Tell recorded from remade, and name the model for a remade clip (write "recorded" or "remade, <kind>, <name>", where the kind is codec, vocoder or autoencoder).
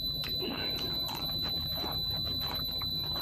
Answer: remade, vocoder, BigVGAN v2